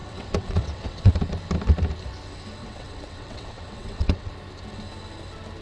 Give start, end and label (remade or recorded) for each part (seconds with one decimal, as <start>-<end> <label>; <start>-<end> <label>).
0.0-1.1 remade; 1.1-2.6 recorded; 2.6-4.3 remade; 4.3-5.6 recorded